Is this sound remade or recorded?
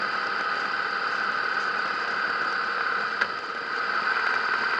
recorded